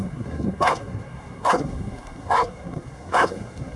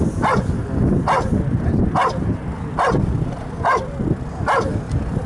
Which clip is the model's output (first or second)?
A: first